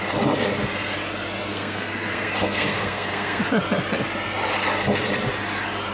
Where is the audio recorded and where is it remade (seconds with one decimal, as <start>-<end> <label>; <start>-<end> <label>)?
0.0-1.5 recorded; 1.5-3.4 remade; 3.4-5.9 recorded